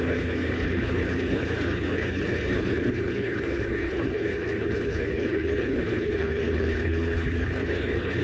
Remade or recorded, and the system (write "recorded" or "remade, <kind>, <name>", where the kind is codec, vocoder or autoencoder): remade, codec, HILCodec